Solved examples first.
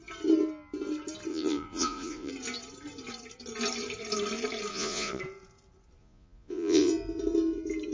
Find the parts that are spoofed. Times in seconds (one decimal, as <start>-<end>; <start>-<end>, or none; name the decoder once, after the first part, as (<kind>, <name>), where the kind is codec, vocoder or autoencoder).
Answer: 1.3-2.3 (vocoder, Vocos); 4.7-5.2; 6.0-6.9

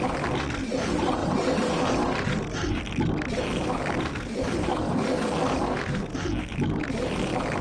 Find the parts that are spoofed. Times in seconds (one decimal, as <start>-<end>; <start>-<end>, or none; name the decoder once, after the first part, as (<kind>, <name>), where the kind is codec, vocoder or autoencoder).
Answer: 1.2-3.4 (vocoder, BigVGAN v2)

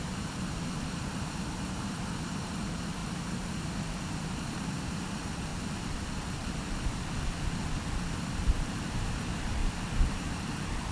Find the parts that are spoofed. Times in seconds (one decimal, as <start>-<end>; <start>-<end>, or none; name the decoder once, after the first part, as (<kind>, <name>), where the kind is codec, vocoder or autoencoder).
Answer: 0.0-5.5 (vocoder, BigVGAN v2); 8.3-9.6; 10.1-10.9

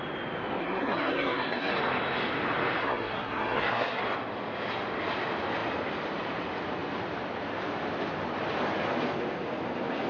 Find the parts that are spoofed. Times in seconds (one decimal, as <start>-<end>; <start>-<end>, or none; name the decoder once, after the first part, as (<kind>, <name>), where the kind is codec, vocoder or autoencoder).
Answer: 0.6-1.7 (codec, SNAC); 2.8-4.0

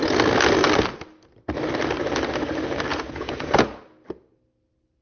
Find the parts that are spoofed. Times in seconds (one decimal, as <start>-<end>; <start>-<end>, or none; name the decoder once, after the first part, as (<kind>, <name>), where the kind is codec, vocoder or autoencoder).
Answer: 2.9-3.8 (vocoder, Vocos)

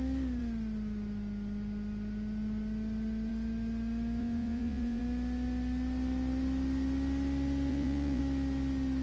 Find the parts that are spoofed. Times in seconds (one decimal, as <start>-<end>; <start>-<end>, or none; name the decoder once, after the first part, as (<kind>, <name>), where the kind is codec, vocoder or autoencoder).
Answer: 4.2-5.0 (vocoder, Vocos); 7.7-8.2